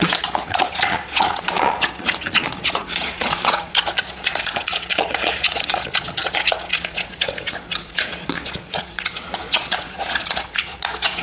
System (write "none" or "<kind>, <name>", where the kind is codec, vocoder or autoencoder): vocoder, Vocos